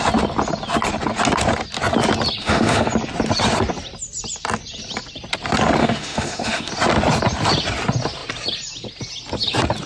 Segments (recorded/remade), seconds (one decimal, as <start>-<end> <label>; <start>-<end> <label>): 0.0-2.4 recorded; 2.4-2.9 remade; 2.9-5.8 recorded; 5.8-6.7 remade; 6.7-9.9 recorded